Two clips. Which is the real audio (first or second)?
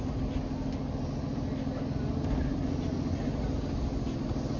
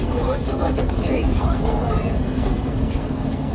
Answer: first